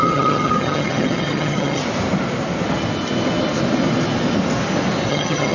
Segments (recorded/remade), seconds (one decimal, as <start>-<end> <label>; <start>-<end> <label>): 0.0-1.8 remade; 1.8-5.1 recorded; 5.1-5.5 remade